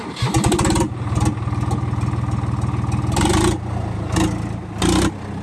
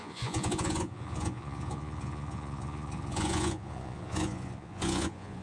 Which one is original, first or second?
first